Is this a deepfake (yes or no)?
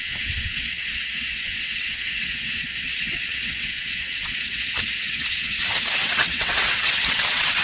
yes